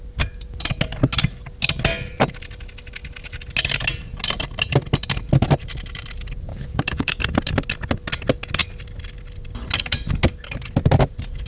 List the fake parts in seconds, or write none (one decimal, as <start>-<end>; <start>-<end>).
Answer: 6.5-7.2